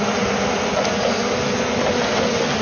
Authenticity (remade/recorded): recorded